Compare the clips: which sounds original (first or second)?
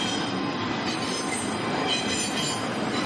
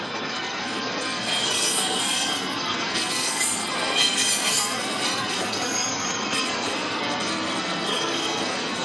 first